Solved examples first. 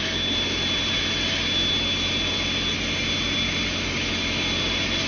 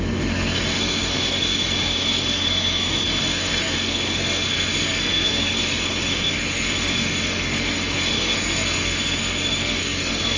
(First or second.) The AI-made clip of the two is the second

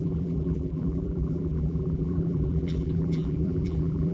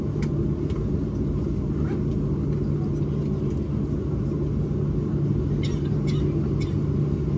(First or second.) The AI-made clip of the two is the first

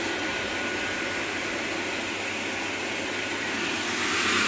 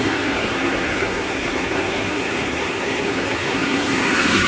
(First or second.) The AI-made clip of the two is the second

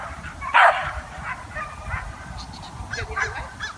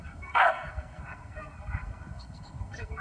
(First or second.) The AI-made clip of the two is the second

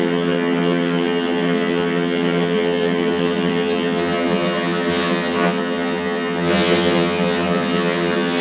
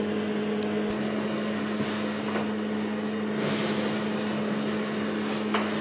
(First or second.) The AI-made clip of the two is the first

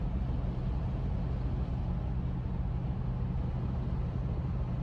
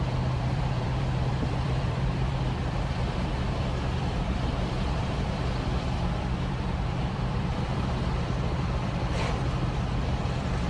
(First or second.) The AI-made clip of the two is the second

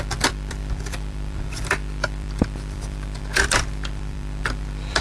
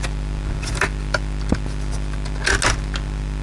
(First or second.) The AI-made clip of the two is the first